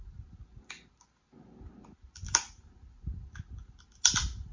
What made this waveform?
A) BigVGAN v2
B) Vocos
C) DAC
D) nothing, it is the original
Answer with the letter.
D